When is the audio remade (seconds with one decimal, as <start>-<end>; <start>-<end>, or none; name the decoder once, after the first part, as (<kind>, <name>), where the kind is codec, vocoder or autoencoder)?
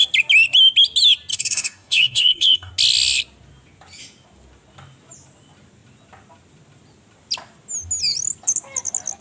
1.3-2.7 (codec, DAC)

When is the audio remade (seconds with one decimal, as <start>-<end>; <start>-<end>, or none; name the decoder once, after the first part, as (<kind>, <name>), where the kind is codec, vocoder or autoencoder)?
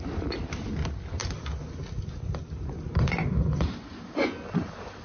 none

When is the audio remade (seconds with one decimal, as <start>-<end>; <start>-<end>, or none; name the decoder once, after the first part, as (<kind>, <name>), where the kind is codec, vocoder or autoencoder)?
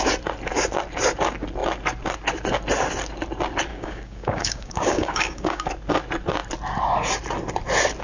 3.7-5.7 (codec, DAC)